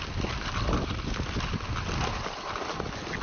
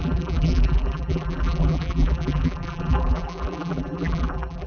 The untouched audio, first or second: first